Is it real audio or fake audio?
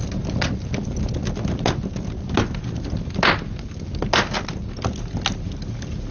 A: real